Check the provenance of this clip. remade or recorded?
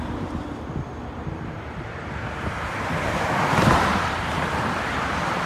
remade